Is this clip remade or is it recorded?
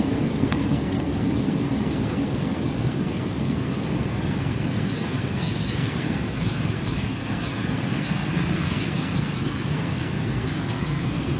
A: remade